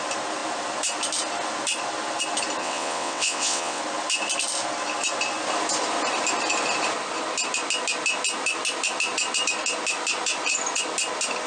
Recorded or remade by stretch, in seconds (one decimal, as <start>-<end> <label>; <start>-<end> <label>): 0.0-2.6 recorded; 2.6-3.8 remade; 3.8-11.5 recorded